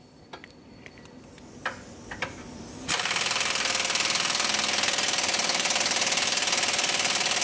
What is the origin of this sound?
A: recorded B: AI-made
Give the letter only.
A